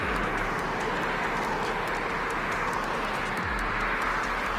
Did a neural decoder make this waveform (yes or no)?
no